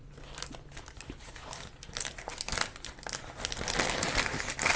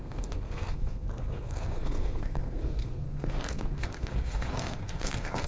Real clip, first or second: first